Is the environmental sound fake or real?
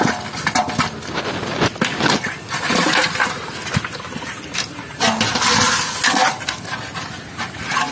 real